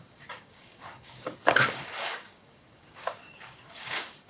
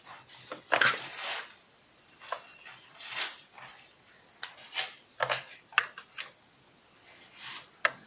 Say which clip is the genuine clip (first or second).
second